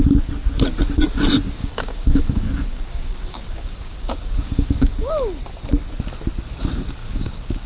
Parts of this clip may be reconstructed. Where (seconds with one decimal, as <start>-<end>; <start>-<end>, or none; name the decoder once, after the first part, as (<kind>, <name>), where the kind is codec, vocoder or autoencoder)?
1.6-5.1 (codec, DAC); 7.0-7.7